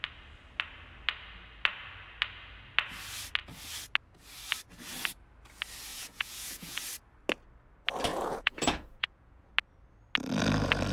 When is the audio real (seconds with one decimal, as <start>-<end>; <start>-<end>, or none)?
0.0-5.9; 6.8-8.1; 9.5-10.9